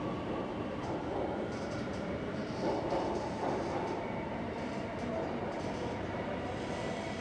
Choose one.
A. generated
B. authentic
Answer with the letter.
A